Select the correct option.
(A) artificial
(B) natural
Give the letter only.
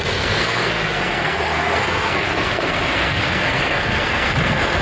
A